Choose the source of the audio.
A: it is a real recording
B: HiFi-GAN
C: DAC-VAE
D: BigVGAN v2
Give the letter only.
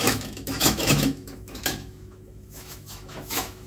C